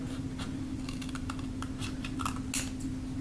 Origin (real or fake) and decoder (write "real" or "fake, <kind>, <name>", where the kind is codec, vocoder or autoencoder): real